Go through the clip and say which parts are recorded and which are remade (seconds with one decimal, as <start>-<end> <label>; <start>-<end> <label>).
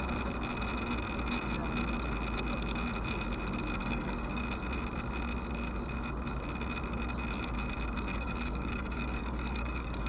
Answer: 0.0-3.8 recorded; 3.8-4.4 remade; 4.4-8.1 recorded; 8.1-10.1 remade